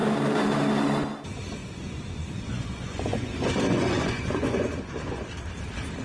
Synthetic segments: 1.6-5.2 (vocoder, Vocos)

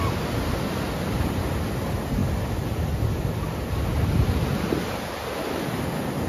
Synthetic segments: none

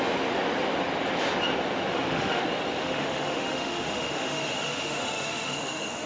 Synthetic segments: 1.9-2.4 (autoencoder, DAC-VAE); 2.8-6.1